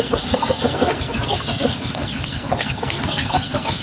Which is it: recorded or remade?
remade